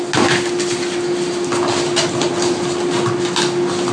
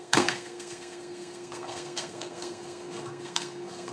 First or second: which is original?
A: first